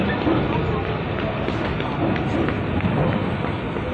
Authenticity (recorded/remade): recorded